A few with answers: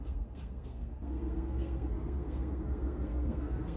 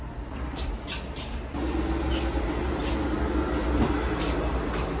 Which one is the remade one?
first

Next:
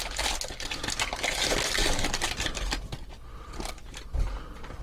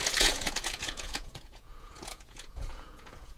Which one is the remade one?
second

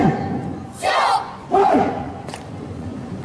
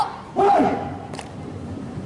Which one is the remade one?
first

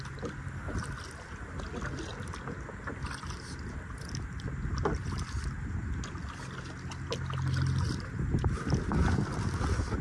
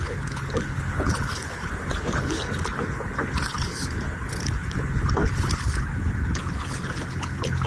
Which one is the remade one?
second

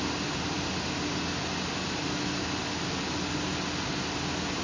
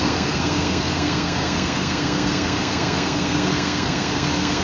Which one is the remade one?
second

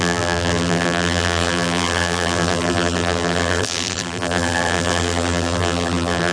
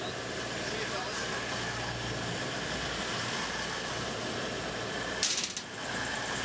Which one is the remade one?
first